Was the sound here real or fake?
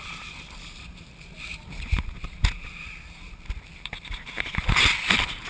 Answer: real